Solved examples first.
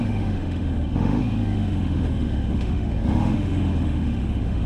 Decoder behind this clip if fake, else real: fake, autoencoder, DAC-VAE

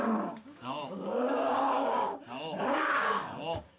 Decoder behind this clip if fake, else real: fake, codec, DAC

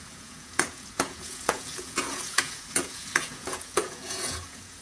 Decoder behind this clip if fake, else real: fake, vocoder, Vocos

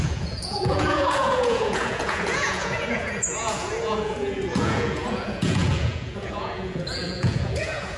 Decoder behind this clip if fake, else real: fake, vocoder, Vocos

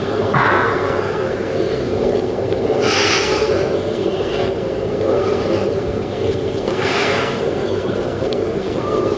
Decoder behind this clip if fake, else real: fake, codec, SNAC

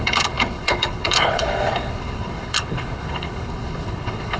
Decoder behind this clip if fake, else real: fake, codec, HILCodec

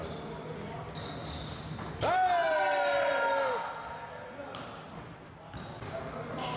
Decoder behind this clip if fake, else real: real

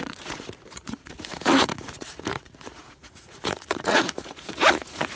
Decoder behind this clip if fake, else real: fake, vocoder, Vocos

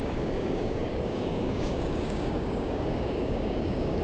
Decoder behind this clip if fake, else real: fake, codec, DAC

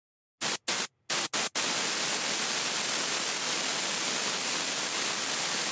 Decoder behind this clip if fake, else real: real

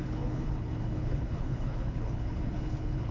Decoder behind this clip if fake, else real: fake, codec, HILCodec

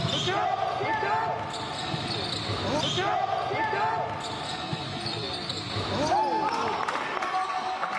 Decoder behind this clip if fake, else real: real